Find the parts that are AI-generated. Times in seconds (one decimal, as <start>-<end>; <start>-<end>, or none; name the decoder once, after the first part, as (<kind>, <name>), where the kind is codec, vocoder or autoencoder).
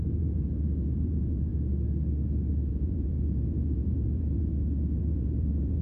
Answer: 0.0-1.5 (vocoder, Vocos); 2.7-4.5; 5.0-5.8